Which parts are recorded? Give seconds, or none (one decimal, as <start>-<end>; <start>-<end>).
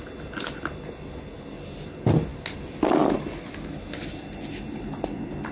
0.0-5.5